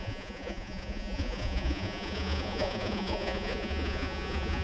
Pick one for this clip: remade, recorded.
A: remade